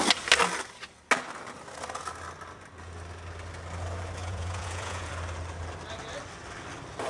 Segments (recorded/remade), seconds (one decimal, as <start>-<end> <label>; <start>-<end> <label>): 0.0-4.2 recorded; 4.2-5.1 remade; 5.1-7.1 recorded